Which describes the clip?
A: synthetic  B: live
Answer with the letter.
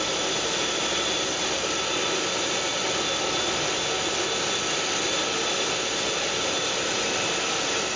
B